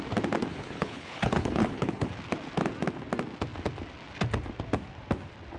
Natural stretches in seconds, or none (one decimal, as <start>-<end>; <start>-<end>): 0.0-0.5; 2.1-5.6